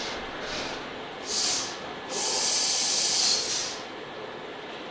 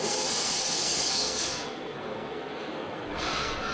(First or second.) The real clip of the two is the first